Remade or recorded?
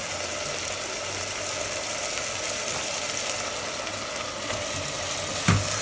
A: recorded